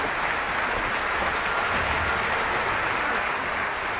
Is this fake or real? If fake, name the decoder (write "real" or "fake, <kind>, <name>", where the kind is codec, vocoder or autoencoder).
real